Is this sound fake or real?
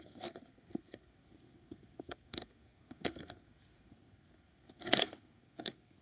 fake